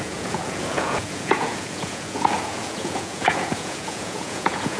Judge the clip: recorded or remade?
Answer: remade